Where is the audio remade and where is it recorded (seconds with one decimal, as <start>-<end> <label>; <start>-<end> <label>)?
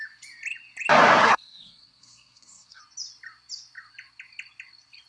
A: 0.0-1.2 recorded; 1.2-2.8 remade; 2.8-5.1 recorded